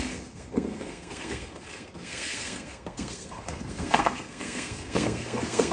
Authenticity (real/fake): fake